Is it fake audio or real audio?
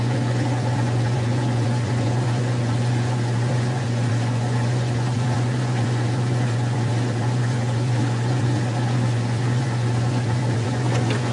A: fake